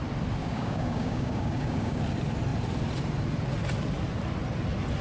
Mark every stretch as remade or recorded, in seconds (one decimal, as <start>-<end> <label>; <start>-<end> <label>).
0.0-0.4 recorded; 0.4-2.0 remade; 2.0-5.0 recorded